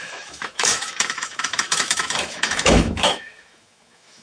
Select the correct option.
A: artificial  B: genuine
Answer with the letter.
A